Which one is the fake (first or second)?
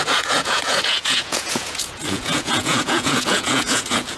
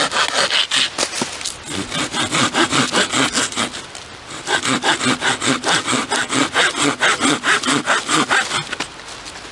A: first